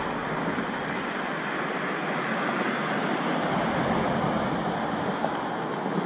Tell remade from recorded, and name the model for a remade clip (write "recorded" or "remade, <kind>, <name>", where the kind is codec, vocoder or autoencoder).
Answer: recorded